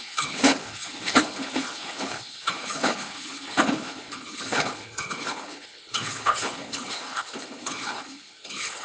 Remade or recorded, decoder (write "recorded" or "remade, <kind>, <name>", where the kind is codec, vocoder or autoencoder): remade, codec, HILCodec